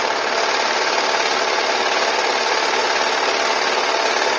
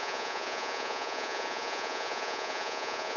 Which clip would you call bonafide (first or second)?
first